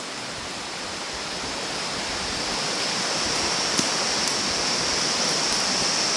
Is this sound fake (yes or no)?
no